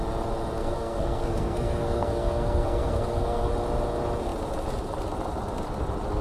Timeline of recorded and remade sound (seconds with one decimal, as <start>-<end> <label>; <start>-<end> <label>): 0.0-0.6 recorded; 0.6-3.5 remade; 3.5-6.2 recorded